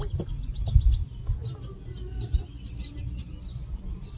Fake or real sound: real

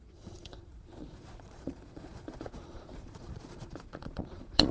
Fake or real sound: fake